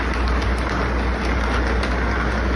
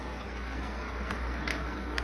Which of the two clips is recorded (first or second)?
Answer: first